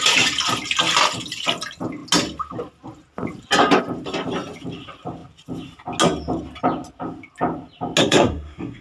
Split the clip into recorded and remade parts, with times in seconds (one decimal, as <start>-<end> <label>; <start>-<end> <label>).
0.0-8.0 recorded; 8.0-8.8 remade